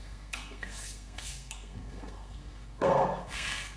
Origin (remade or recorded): remade